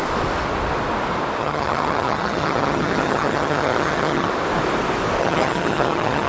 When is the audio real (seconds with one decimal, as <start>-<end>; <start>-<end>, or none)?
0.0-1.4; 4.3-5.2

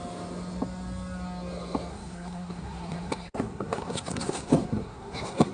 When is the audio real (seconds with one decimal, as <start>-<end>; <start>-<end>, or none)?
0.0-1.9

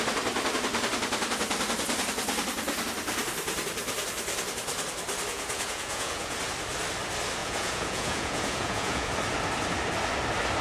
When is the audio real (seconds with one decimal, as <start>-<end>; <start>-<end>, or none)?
0.0-5.3; 6.4-7.4; 9.1-10.6

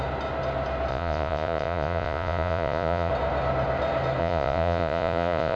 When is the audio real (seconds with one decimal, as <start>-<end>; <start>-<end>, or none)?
0.0-0.9; 3.1-4.2

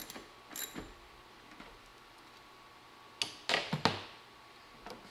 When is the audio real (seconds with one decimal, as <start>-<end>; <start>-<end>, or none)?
0.0-5.1

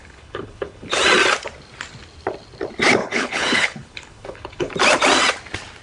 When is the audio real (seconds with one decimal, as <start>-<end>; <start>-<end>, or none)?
0.9-3.0; 4.7-5.8

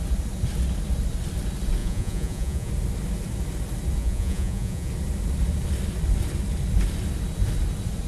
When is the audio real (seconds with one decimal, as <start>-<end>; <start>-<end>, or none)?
0.0-1.8; 2.7-4.0; 4.9-8.1

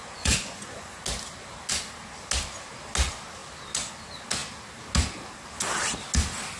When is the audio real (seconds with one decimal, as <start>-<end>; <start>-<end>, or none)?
1.0-6.6